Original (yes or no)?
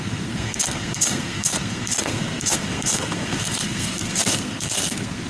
no